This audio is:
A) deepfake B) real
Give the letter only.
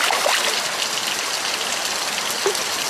B